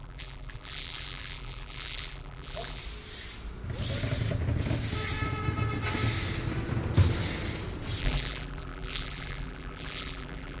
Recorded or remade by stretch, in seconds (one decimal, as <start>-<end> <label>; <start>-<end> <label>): 0.0-2.8 remade; 2.8-8.0 recorded; 8.0-10.6 remade